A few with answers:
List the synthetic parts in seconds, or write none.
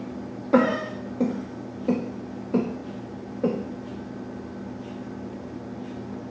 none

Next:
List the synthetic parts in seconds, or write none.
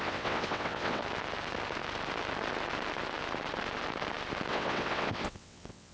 0.0-1.0 (vocoder, WaveNeXt); 4.5-5.9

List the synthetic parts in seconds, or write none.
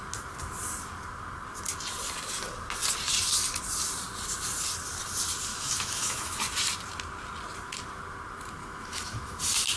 5.5-6.4 (autoencoder, DAC-VAE); 8.6-9.4